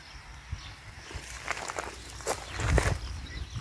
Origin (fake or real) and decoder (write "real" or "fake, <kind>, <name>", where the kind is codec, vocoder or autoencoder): real